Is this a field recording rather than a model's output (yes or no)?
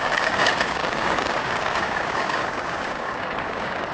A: no